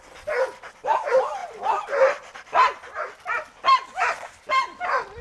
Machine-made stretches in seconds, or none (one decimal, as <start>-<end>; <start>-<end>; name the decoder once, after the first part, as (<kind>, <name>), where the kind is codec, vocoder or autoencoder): 1.4-4.5 (vocoder, BigVGAN v2)